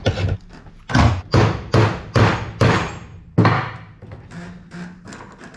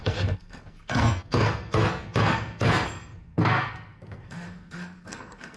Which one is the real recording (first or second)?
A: first